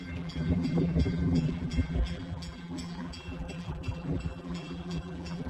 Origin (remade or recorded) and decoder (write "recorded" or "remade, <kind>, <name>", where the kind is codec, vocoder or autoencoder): remade, vocoder, BigVGAN v2